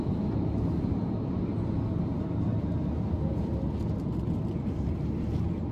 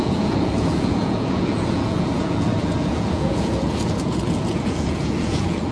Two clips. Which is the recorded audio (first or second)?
first